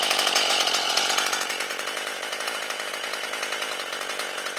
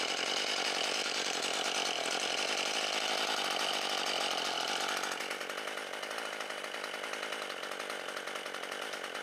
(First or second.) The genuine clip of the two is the second